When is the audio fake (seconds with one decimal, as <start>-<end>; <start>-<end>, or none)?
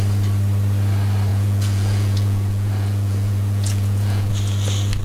1.3-4.3